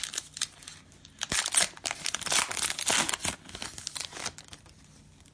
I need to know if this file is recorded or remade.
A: recorded